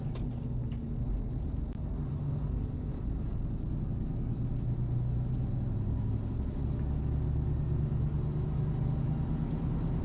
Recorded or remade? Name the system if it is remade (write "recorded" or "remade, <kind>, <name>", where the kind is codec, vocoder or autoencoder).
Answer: recorded